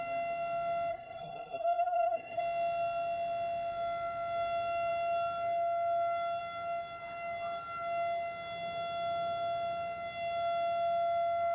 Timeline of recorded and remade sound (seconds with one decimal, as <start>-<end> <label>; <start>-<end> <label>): 0.0-0.9 recorded; 0.9-2.4 remade; 2.4-11.5 recorded